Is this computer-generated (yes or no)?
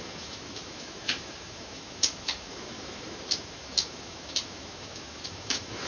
yes